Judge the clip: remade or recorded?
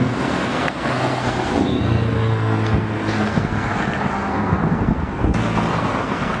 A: remade